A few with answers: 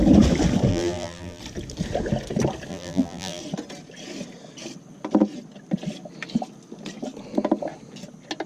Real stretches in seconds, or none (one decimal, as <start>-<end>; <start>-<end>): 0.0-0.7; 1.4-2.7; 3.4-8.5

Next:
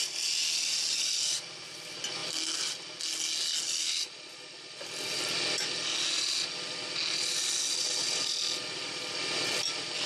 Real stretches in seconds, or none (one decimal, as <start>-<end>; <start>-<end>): 0.0-10.1

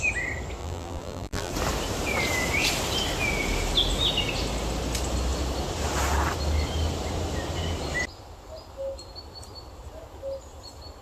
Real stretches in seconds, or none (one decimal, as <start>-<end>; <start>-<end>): 0.0-0.6; 1.5-11.0